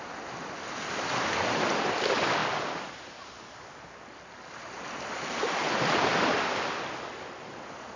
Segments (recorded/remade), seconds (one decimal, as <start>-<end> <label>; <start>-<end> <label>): 0.0-8.0 recorded